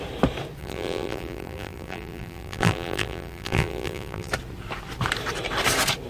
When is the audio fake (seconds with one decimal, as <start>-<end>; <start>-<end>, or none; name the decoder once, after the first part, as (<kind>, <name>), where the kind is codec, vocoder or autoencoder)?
0.6-4.3 (vocoder, BigVGAN v2)